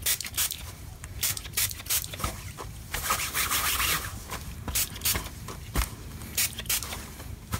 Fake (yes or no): yes